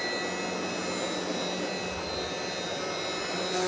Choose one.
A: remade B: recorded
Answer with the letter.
B